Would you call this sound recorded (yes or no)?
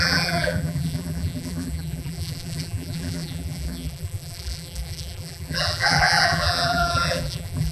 no